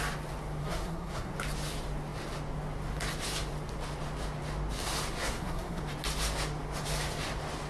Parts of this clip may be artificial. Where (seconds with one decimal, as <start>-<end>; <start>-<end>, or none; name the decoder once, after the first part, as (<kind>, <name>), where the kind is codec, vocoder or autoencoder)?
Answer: 0.6-1.3 (codec, SNAC); 5.2-5.8